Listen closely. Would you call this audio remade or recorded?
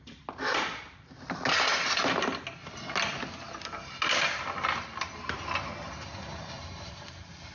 recorded